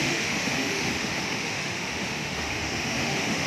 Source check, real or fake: fake